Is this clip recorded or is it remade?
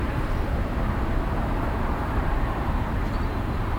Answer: remade